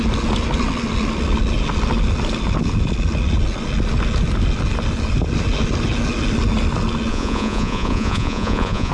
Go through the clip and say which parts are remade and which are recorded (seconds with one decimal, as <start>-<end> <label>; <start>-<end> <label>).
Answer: 0.0-7.1 recorded; 7.1-8.9 remade